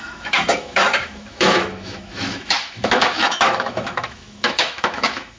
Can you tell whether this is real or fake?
fake